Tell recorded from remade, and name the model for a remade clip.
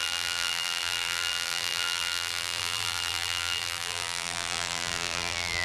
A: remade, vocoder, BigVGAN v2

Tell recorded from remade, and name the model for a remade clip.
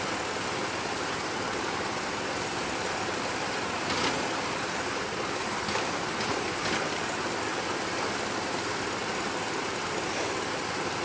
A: recorded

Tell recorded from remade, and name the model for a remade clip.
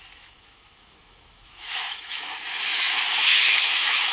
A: remade, autoencoder, DAC-VAE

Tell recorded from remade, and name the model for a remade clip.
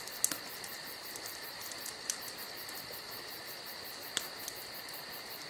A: recorded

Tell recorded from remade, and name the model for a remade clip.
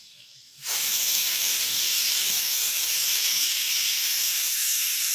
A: remade, codec, DAC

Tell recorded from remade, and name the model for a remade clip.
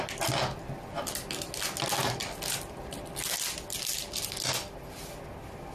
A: recorded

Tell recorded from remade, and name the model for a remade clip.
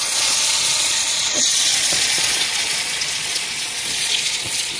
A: remade, vocoder, Vocos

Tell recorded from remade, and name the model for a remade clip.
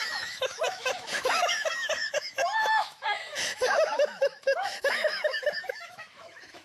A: remade, autoencoder, DAC-VAE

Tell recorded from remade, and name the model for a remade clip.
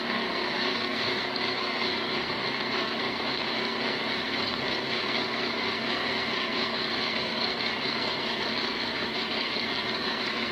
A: remade, codec, SNAC